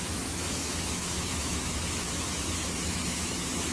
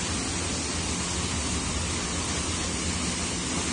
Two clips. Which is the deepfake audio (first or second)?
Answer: first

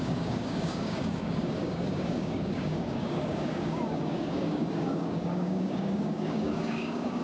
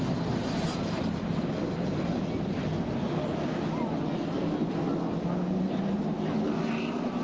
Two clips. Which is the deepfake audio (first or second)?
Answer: first